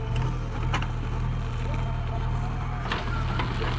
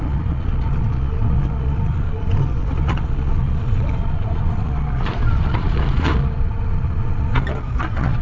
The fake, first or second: second